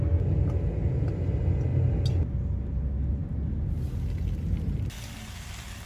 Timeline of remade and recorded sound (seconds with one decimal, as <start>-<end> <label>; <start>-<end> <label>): 0.0-5.9 recorded